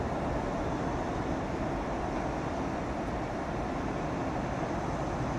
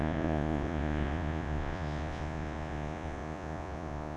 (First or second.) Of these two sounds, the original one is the first